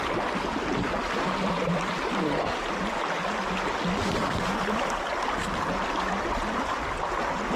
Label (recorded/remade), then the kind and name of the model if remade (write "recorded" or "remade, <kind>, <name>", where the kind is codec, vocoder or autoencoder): recorded